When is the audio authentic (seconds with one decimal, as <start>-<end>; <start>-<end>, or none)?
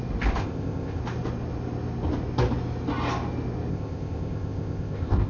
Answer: 0.0-0.4; 1.0-3.7